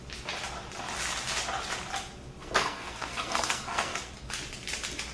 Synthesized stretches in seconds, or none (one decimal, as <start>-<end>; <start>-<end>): 2.4-4.1